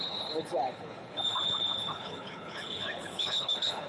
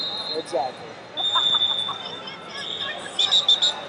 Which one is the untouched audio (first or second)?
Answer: second